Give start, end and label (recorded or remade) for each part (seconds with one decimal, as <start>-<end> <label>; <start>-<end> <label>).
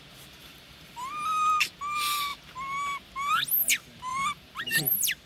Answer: 0.0-0.4 recorded; 0.4-1.1 remade; 1.1-4.1 recorded; 4.1-4.8 remade; 4.8-5.3 recorded